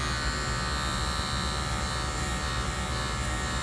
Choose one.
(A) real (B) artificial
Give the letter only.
A